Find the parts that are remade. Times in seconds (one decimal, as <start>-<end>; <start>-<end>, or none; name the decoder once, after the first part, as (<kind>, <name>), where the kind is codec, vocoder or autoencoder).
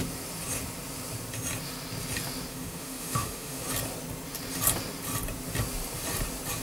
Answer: 2.5-3.6 (autoencoder, DAC-VAE)